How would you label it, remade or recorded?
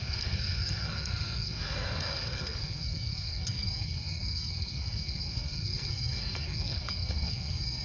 remade